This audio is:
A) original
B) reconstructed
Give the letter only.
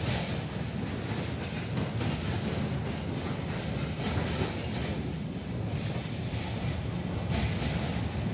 A